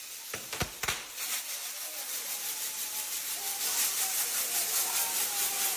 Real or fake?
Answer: real